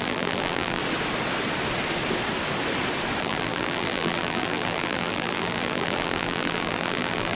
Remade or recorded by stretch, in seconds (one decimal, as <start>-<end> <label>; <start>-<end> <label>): 0.0-0.8 remade; 0.8-3.2 recorded; 3.2-7.4 remade